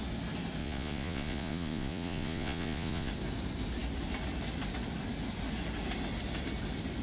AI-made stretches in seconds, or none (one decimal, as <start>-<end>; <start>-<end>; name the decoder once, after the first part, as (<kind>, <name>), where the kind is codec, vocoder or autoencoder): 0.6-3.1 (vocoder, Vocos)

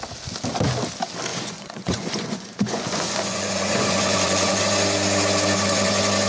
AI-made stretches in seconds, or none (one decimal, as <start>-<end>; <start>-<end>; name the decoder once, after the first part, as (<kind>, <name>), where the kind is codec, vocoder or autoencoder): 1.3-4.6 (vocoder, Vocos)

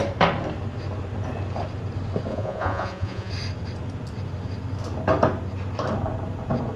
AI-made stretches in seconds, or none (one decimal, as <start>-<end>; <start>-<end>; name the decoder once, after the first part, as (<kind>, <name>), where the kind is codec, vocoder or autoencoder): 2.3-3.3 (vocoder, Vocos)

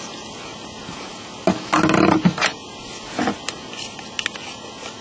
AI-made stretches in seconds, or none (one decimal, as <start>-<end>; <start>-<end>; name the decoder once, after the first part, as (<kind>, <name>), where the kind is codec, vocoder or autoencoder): none

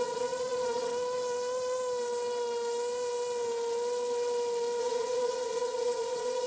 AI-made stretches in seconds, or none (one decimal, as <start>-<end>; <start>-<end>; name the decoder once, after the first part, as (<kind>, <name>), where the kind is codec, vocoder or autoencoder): 0.0-0.9 (vocoder, Vocos); 4.8-6.5

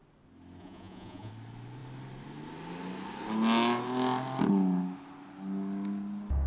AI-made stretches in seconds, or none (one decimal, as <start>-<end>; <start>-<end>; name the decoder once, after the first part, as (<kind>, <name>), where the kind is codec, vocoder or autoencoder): 0.6-1.3 (vocoder, Vocos)